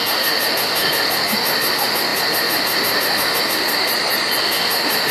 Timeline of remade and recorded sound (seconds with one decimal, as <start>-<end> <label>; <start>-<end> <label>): 0.0-3.9 remade; 3.9-4.4 recorded; 4.4-5.1 remade